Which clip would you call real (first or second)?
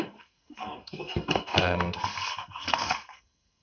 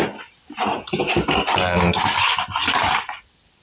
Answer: second